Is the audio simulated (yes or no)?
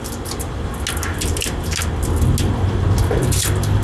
no